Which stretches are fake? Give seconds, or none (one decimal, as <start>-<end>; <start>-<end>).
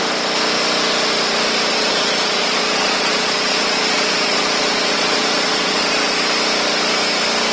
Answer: 1.7-6.2